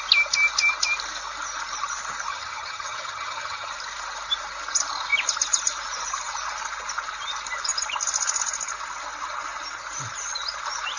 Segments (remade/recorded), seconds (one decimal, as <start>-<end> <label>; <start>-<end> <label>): 0.0-2.3 recorded; 2.3-3.7 remade; 3.7-11.0 recorded